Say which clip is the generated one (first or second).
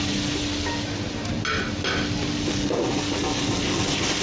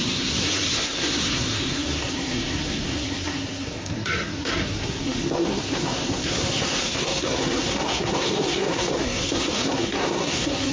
second